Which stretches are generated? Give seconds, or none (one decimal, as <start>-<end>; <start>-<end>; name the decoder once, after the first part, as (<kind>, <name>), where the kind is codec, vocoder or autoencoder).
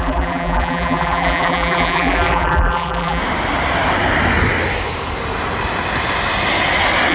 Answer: 0.0-3.2 (vocoder, BigVGAN v2)